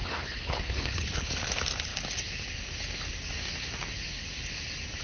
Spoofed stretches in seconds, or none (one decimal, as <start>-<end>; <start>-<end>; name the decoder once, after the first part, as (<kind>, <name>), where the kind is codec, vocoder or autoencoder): 0.0-1.3 (codec, HILCodec)